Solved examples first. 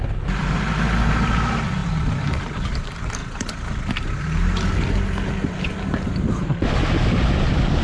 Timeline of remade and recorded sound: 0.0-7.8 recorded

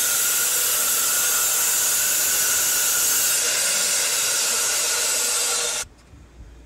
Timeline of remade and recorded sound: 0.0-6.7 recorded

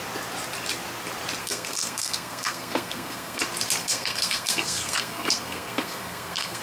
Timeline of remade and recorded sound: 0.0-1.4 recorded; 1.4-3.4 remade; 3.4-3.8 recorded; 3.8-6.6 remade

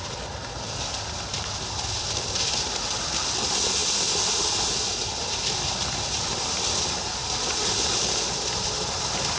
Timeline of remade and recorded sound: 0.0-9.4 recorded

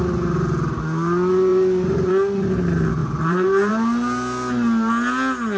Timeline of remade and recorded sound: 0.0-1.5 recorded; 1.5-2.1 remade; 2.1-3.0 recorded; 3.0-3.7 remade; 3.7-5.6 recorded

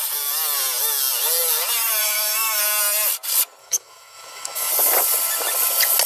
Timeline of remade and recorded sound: 0.0-2.0 recorded; 2.0-2.6 remade; 2.6-3.6 recorded; 3.6-4.7 remade; 4.7-6.1 recorded

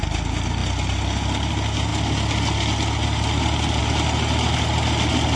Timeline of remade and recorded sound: 0.0-5.4 recorded